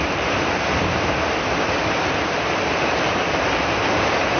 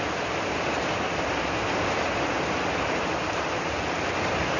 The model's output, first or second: first